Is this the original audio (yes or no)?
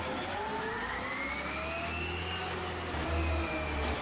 yes